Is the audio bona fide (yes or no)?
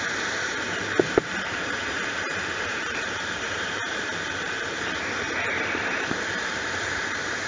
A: no